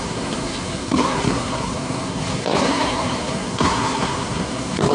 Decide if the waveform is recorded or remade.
remade